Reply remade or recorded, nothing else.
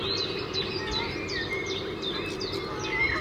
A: recorded